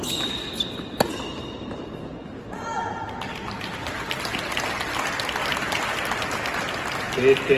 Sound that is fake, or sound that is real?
real